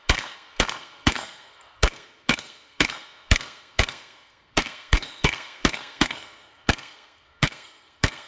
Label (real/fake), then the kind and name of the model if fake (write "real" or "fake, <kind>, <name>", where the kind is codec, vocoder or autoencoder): fake, codec, SNAC